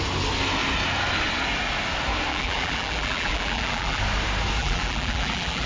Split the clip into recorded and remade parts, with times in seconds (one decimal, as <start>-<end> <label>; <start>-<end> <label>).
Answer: 0.0-2.3 recorded; 2.3-4.0 remade; 4.0-4.6 recorded; 4.6-5.7 remade